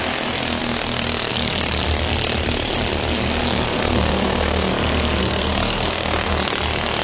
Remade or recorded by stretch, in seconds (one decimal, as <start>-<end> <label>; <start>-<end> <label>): 0.0-3.8 recorded; 3.8-4.7 remade; 4.7-5.2 recorded; 5.2-6.3 remade; 6.3-7.0 recorded

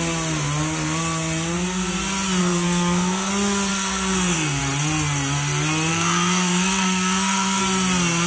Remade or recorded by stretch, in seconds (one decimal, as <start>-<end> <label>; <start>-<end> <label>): 0.0-2.4 recorded; 2.4-3.3 remade; 3.3-3.7 recorded; 3.7-4.6 remade; 4.6-5.9 recorded; 5.9-7.6 remade; 7.6-8.3 recorded

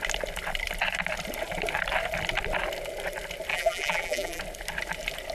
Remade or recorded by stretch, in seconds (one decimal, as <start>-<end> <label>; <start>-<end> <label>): 0.0-3.5 recorded; 3.5-4.4 remade; 4.4-5.3 recorded

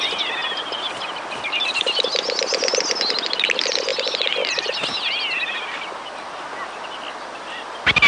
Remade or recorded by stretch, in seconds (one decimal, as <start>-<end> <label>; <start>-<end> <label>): 0.0-8.1 recorded